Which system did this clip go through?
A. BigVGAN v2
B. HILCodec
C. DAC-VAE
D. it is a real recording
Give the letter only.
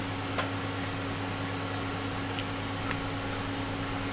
D